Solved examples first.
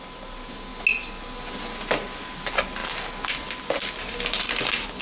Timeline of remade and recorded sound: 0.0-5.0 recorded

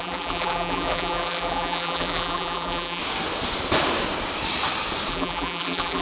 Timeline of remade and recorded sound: 0.0-3.0 remade; 3.0-5.1 recorded; 5.1-6.0 remade

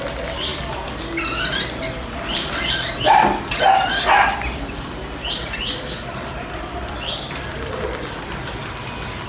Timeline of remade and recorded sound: 0.0-5.4 recorded; 5.4-8.0 remade; 8.0-9.3 recorded

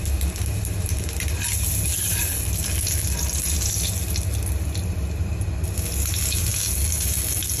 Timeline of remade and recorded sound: 0.0-7.6 recorded

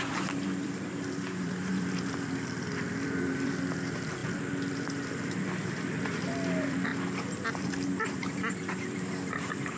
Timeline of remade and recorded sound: 0.0-6.9 remade; 6.9-7.7 recorded; 7.7-9.8 remade

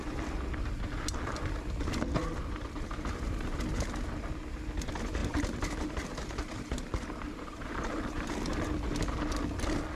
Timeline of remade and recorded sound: 0.0-5.2 recorded; 5.2-8.3 remade; 8.3-10.0 recorded